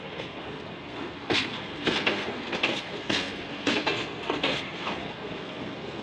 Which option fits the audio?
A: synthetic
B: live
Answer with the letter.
A